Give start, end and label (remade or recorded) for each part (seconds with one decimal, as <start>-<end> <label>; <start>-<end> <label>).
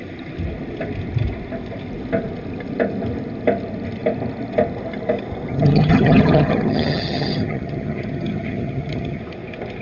0.0-5.5 recorded; 5.5-9.2 remade; 9.2-9.8 recorded